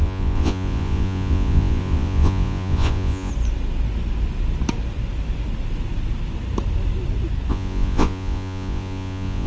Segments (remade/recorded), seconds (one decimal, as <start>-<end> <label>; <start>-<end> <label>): 0.0-3.3 remade; 3.3-7.5 recorded; 7.5-9.5 remade